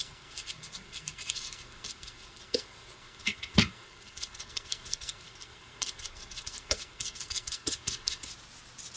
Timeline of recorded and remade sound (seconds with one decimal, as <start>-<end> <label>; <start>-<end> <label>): 0.0-8.3 remade; 8.3-9.0 recorded